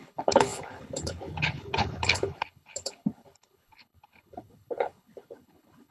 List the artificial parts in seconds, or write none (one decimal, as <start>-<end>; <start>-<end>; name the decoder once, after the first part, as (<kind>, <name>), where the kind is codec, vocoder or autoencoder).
0.0-5.9 (codec, HILCodec)